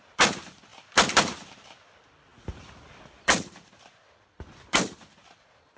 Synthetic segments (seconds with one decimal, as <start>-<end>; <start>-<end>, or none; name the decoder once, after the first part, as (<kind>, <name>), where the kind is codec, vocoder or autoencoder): 0.0-5.8 (vocoder, BigVGAN v2)

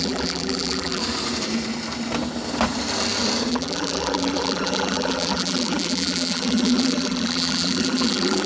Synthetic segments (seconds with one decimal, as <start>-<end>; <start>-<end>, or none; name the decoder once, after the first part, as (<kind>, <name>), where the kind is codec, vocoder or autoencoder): 0.0-1.0 (vocoder, BigVGAN v2); 3.5-8.5